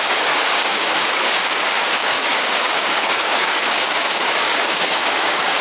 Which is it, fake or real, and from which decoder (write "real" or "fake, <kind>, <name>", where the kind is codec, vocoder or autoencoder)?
fake, codec, DAC